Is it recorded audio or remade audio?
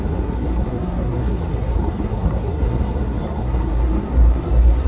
remade